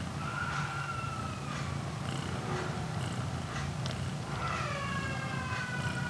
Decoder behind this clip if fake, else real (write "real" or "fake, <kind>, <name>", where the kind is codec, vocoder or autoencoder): real